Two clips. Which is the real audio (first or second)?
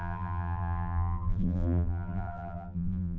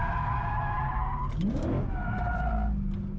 second